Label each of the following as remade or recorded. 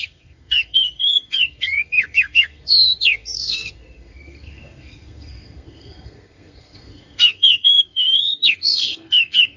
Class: remade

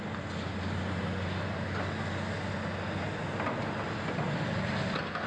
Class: recorded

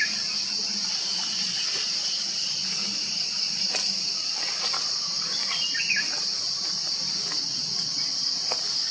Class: remade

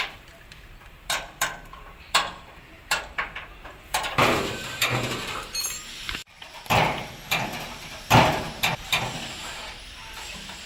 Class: remade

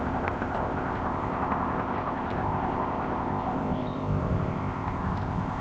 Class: remade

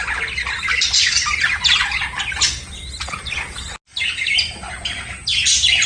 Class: recorded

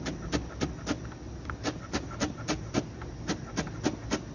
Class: recorded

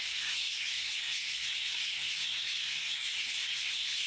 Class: remade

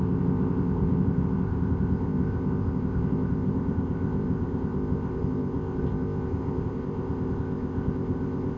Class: remade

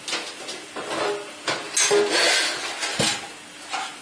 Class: recorded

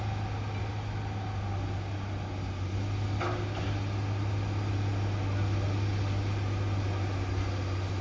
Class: recorded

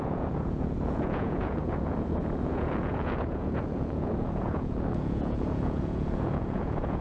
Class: remade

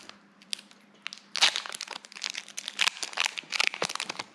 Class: recorded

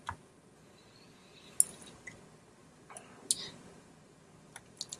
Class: recorded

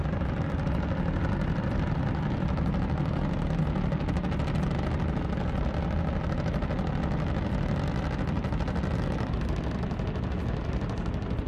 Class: recorded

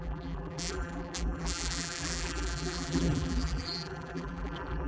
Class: remade